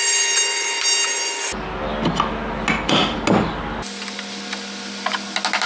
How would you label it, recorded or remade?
recorded